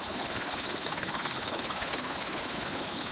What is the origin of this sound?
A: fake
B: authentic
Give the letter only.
A